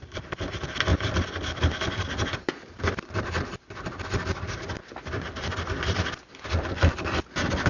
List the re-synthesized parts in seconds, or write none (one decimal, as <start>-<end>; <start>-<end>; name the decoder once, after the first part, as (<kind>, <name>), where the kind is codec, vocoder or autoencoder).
none